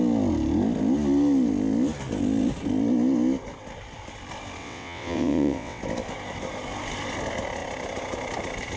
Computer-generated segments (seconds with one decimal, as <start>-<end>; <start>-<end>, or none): 4.6-5.8